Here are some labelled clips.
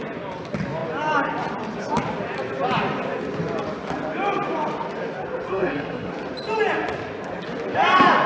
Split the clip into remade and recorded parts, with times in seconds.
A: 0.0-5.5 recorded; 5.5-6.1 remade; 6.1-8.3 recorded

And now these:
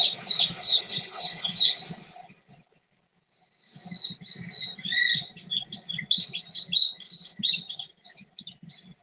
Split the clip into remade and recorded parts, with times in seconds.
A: 0.0-0.6 recorded; 0.6-1.8 remade; 1.8-6.8 recorded; 6.8-7.4 remade; 7.4-9.0 recorded

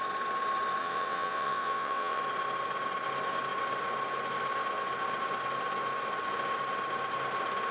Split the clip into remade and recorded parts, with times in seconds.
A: 0.0-0.8 recorded; 0.8-2.2 remade; 2.2-7.7 recorded

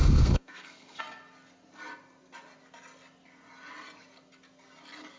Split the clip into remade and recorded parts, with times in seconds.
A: 0.0-1.0 remade; 1.0-5.2 recorded

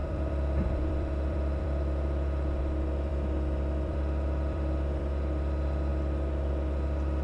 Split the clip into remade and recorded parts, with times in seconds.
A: 0.0-2.6 remade; 2.6-3.1 recorded; 3.1-5.0 remade; 5.0-7.2 recorded

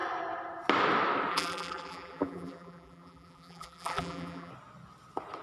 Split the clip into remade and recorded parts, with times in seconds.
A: 0.0-1.3 recorded; 1.3-4.5 remade; 4.5-5.4 recorded

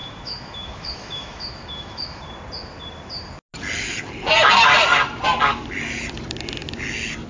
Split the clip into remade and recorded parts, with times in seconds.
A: 0.0-2.2 remade; 2.2-7.3 recorded

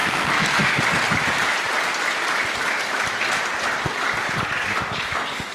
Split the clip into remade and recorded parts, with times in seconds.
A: 0.0-0.8 remade; 0.8-5.5 recorded